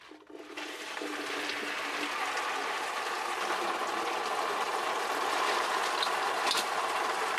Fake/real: real